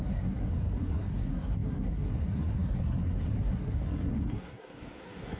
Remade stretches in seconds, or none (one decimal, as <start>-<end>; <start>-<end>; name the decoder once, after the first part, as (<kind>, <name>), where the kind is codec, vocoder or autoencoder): 0.0-5.4 (codec, SNAC)